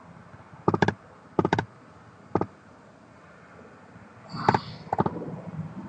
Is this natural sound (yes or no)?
yes